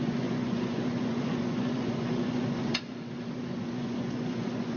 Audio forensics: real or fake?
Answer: fake